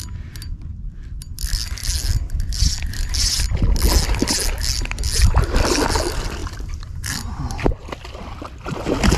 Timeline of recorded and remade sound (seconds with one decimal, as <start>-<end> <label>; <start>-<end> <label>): 0.0-6.4 recorded; 6.4-7.4 remade; 7.4-9.2 recorded